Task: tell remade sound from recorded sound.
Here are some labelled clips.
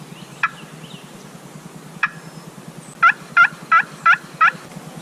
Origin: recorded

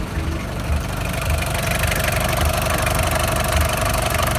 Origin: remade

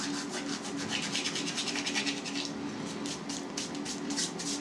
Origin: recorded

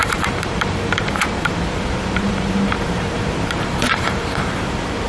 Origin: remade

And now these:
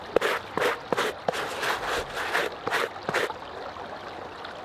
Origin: recorded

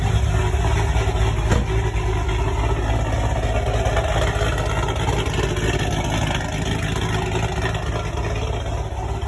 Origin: recorded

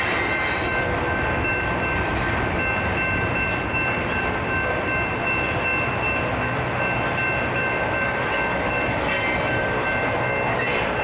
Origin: recorded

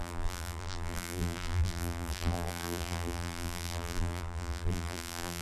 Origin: remade